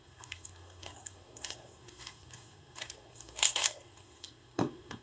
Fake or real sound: fake